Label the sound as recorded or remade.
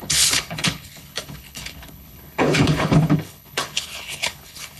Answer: remade